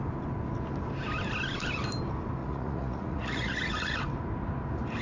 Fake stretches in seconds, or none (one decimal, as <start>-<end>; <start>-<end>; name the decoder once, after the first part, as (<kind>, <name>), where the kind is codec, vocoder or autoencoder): 2.4-4.0 (vocoder, Vocos)